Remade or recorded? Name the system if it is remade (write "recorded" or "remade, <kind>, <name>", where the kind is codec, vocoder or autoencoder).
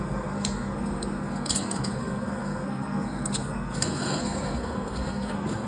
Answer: remade, codec, SNAC